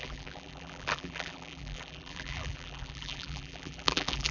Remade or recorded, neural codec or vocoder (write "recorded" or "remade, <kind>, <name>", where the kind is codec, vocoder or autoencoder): remade, vocoder, BigVGAN v2